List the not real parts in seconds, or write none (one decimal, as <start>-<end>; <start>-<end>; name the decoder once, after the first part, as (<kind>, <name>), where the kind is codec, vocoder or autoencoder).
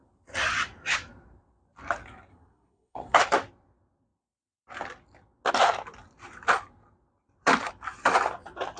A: 2.3-3.2 (codec, SNAC)